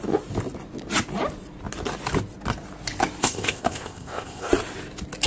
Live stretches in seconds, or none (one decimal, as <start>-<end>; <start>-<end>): 0.0-3.2; 4.5-5.3